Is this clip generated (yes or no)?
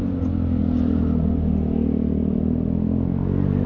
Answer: no